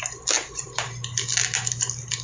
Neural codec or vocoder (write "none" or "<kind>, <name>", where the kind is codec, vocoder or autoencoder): none